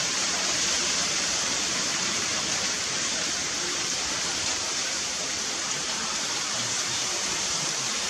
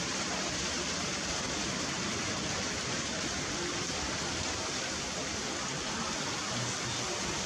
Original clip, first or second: second